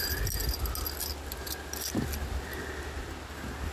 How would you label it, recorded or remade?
recorded